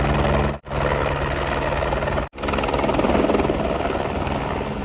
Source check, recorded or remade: recorded